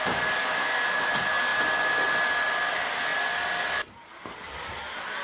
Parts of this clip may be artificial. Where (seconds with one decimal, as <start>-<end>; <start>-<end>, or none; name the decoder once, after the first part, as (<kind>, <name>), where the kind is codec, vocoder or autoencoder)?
0.4-1.1 (autoencoder, DAC-VAE)